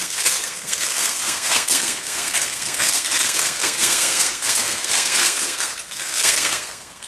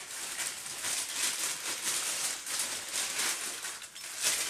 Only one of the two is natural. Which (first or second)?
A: second